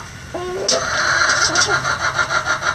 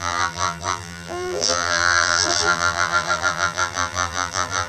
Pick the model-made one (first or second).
second